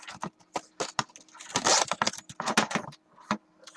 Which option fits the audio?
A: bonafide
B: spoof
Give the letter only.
A